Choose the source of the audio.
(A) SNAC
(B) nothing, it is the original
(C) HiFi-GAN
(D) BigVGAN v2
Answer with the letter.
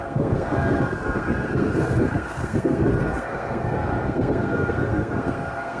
A